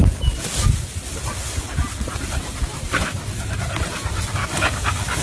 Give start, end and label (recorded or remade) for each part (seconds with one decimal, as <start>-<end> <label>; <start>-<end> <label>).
0.0-4.4 recorded; 4.4-5.2 remade